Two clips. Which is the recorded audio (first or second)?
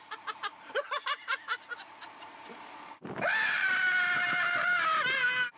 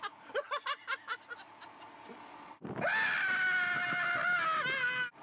second